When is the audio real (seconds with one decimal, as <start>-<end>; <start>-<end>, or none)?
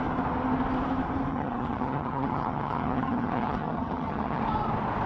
0.0-1.3; 4.4-5.1